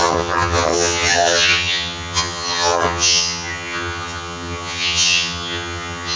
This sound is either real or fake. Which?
fake